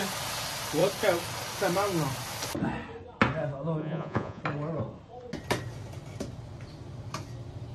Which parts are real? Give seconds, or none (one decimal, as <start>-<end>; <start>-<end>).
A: 0.0-3.8; 4.4-7.7